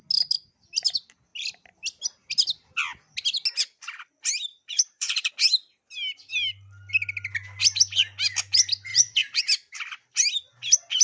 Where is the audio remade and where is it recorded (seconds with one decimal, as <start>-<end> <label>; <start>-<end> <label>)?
0.0-4.5 recorded; 4.5-5.3 remade; 5.3-8.9 recorded; 8.9-9.4 remade; 9.4-11.0 recorded

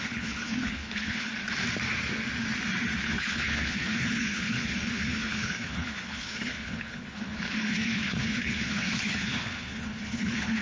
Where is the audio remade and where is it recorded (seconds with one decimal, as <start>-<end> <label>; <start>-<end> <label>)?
0.0-1.3 remade; 1.3-3.0 recorded; 3.0-10.6 remade

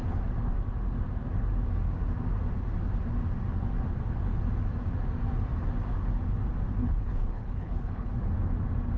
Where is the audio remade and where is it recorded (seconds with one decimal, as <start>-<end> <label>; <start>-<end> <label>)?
0.0-6.8 recorded; 6.8-8.2 remade; 8.2-9.0 recorded

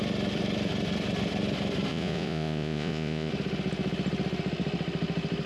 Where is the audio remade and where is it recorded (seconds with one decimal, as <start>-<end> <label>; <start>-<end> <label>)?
0.0-1.9 recorded; 1.9-3.3 remade; 3.3-5.5 recorded

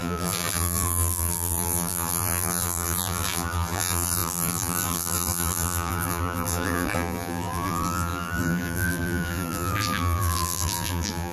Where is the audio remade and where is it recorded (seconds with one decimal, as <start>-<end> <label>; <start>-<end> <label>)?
0.0-11.3 remade

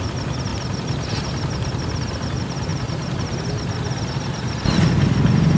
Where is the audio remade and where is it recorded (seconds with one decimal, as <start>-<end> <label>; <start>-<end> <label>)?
0.0-5.6 recorded